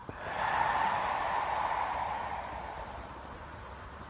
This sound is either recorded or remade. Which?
remade